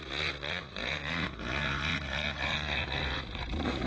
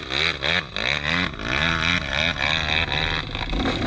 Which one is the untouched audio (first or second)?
second